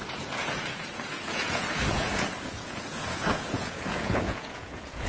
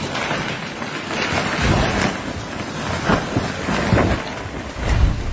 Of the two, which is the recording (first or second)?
second